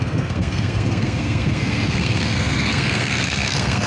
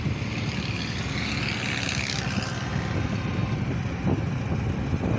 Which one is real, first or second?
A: second